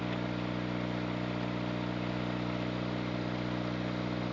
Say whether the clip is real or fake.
real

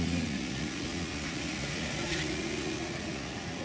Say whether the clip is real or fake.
fake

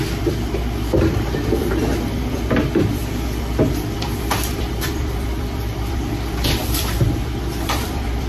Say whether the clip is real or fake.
fake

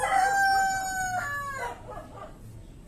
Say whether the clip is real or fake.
real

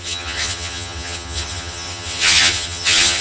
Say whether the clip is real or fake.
fake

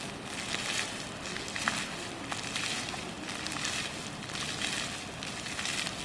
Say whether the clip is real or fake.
real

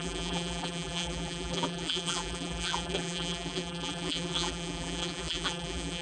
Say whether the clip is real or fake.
fake